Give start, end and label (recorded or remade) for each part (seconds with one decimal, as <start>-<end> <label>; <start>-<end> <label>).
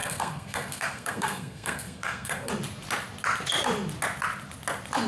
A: 0.0-2.5 remade; 2.5-5.1 recorded